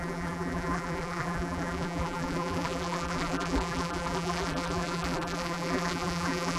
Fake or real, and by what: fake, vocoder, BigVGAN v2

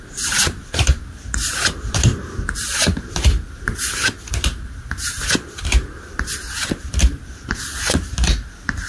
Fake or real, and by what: fake, vocoder, BigVGAN v2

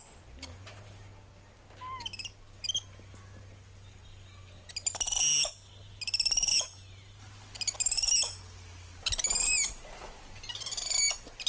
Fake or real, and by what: real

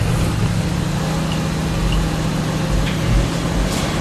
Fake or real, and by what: real